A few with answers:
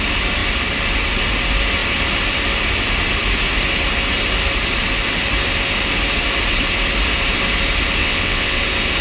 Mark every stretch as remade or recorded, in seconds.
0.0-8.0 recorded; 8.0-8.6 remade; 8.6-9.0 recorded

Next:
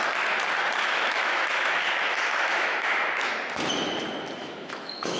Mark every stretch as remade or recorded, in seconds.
0.0-0.8 recorded; 0.8-3.3 remade; 3.3-4.4 recorded; 4.4-5.2 remade

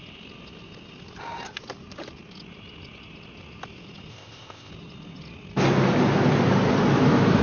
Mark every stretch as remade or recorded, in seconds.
0.0-4.1 recorded; 4.1-4.7 remade; 4.7-7.4 recorded